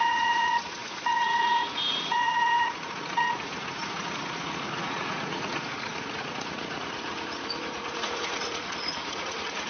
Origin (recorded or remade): remade